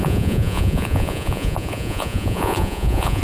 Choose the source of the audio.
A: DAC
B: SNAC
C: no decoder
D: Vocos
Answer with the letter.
D